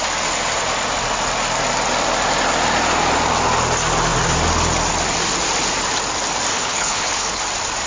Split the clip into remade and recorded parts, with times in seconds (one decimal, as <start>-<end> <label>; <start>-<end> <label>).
0.0-6.5 recorded; 6.5-7.4 remade; 7.4-7.9 recorded